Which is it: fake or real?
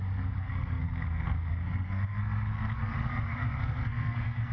fake